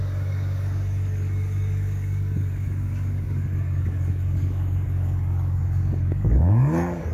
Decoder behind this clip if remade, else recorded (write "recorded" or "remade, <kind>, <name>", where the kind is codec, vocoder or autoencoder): remade, codec, DAC